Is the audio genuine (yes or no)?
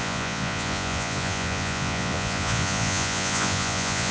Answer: no